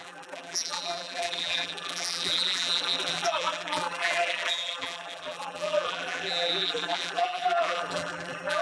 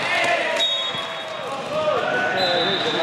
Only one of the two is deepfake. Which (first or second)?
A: first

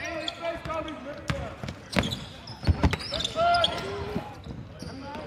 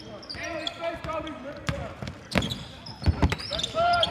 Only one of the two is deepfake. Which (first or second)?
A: second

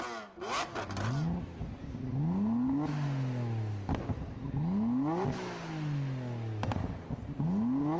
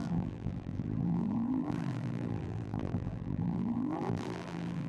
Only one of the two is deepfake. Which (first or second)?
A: second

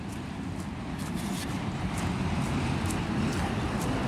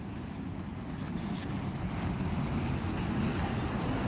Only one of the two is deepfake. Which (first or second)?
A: first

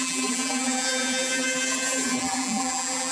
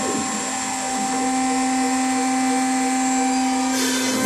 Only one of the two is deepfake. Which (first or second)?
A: first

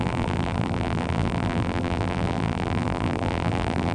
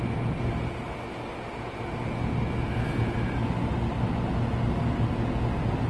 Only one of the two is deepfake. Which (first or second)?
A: first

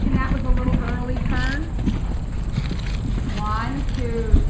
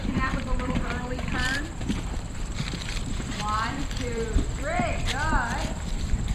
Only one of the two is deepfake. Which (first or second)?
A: second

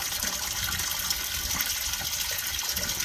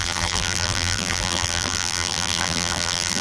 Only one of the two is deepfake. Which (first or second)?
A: second